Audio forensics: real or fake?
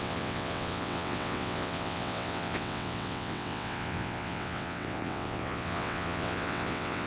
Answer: fake